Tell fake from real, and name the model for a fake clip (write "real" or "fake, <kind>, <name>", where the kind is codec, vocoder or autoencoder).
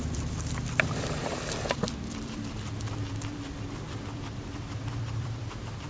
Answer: fake, vocoder, BigVGAN v2